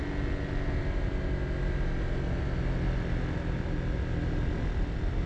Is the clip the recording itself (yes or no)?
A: yes